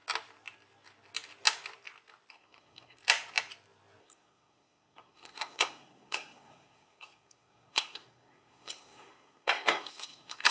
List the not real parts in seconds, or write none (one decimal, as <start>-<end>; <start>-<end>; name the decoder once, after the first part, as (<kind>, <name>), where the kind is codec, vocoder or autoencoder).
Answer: 2.3-3.0 (codec, SNAC); 4.0-10.5

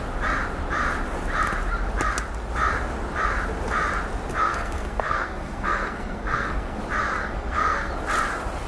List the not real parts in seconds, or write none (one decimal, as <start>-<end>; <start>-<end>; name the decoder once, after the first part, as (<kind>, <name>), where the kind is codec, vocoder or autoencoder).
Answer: 4.4-6.8 (codec, SNAC); 7.2-7.9

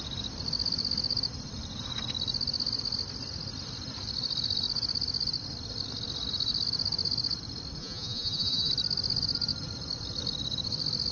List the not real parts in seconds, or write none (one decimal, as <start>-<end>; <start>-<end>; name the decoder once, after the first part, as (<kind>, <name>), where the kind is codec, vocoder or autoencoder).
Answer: 7.8-8.7 (vocoder, Vocos)